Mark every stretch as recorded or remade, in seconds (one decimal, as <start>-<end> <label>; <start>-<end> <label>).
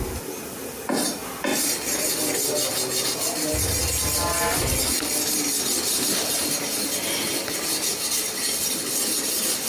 0.0-1.5 recorded; 1.5-2.1 remade; 2.1-9.7 recorded